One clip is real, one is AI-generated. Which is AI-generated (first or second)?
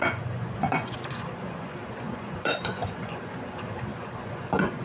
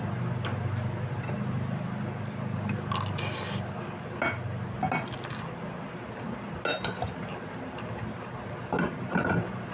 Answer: first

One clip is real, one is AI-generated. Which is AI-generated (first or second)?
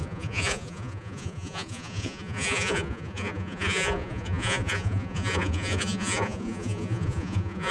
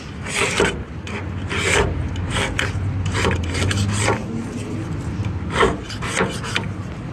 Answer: first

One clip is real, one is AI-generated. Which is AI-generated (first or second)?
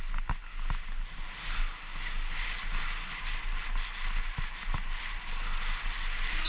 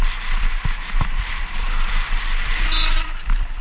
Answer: second